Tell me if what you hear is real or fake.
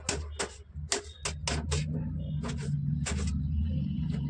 real